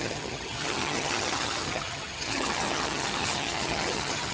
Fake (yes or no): yes